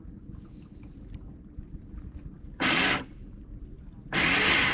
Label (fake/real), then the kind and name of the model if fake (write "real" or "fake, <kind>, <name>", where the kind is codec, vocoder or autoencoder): real